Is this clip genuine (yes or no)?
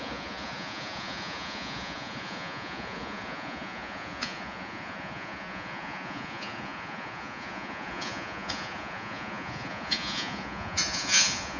no